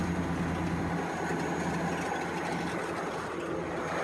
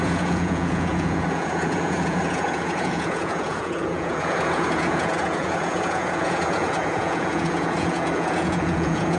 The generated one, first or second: second